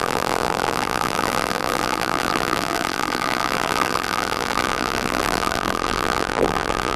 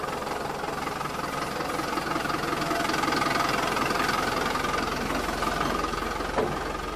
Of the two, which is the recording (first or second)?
second